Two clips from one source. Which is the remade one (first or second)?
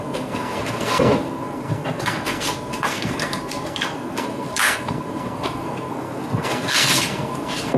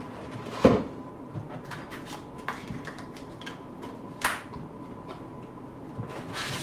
first